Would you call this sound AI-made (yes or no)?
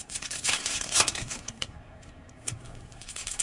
yes